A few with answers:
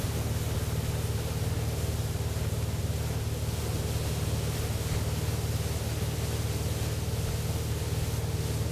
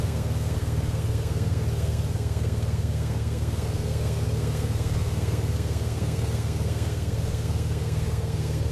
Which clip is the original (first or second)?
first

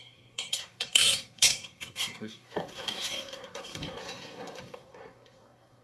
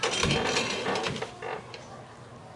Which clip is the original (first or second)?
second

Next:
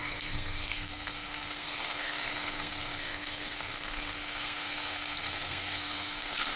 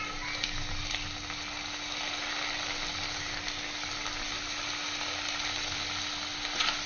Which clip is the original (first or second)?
second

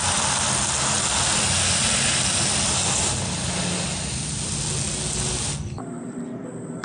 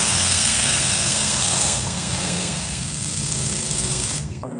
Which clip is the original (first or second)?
first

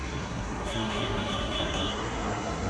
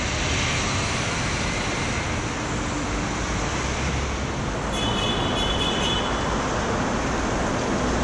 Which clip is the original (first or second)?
second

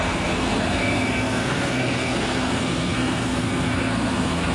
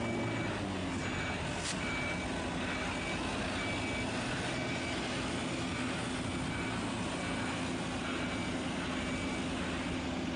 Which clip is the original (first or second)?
second